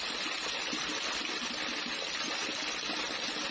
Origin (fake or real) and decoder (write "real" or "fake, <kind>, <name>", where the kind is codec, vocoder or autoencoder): real